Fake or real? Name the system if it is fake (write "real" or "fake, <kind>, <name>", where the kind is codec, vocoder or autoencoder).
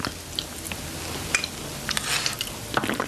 real